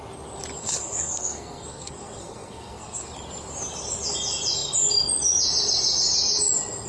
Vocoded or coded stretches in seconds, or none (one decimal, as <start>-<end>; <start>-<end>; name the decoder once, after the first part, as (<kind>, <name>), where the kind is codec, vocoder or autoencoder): 0.6-3.1 (codec, SNAC)